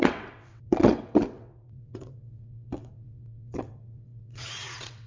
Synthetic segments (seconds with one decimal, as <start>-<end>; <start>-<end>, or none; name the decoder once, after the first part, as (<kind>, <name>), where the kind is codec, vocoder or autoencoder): 0.0-5.1 (vocoder, WaveNeXt)

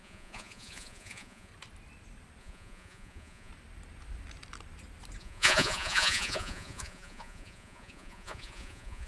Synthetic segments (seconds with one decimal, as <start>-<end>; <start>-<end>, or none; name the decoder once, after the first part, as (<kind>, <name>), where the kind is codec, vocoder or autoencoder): 0.0-1.5 (vocoder, Vocos); 2.4-3.5; 5.2-9.1

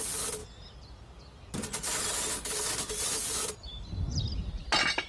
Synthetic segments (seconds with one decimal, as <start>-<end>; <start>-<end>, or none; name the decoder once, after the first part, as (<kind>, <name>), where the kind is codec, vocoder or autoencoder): none